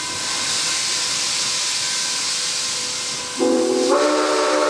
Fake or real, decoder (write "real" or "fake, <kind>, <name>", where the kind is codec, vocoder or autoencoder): real